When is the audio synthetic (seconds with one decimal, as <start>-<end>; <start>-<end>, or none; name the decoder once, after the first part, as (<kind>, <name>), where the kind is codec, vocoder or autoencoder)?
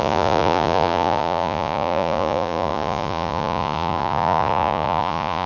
0.0-5.5 (vocoder, Vocos)